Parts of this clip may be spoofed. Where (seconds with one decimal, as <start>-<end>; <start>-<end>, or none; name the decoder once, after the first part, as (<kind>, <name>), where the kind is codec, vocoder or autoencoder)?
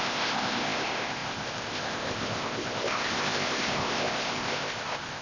0.0-5.2 (codec, ZipCodec)